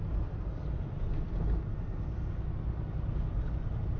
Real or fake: real